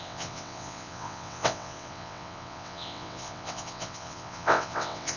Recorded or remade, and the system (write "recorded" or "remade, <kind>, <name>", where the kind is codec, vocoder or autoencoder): remade, vocoder, WaveNeXt